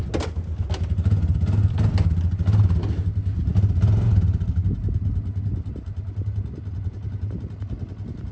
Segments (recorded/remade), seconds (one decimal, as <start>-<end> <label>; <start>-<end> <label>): 0.0-8.3 recorded